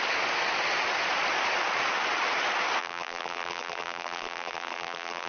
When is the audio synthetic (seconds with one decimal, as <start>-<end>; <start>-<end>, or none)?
2.8-5.3